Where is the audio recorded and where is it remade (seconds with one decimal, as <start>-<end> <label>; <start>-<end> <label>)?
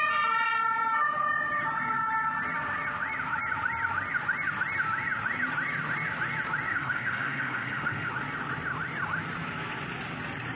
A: 0.0-6.7 recorded; 6.7-8.1 remade; 8.1-10.6 recorded